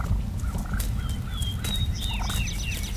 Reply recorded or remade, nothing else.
recorded